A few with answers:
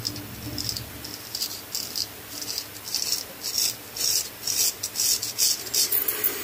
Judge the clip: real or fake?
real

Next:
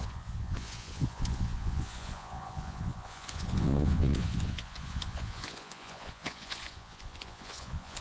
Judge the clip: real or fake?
fake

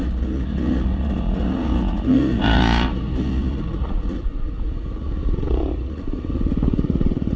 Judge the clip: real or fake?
fake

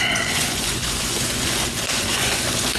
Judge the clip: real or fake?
fake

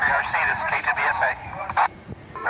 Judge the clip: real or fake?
fake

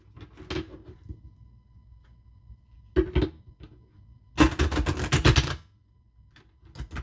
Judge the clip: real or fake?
real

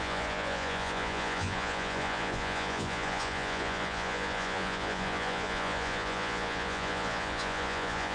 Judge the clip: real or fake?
fake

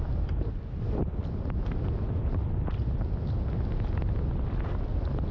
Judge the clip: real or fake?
real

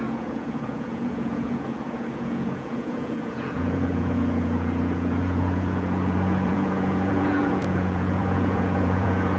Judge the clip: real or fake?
fake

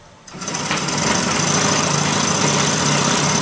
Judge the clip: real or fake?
real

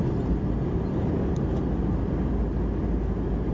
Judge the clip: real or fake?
real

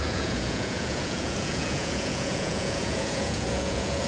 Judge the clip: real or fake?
fake